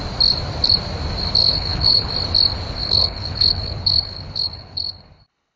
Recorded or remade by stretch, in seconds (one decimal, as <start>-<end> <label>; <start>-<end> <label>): 0.0-1.4 recorded; 1.4-2.1 remade; 2.1-2.8 recorded; 2.8-5.6 remade